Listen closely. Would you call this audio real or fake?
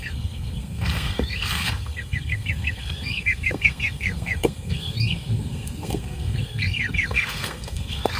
fake